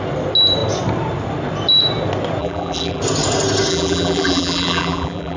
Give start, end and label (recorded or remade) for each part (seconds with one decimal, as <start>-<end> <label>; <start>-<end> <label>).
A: 0.0-2.4 recorded; 2.4-3.0 remade; 3.0-3.7 recorded; 3.7-5.4 remade